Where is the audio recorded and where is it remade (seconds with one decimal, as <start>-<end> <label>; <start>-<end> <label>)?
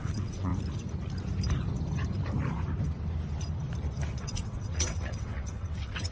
0.0-0.5 remade; 0.5-4.2 recorded; 4.2-6.1 remade